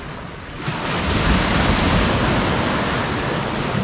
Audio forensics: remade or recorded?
recorded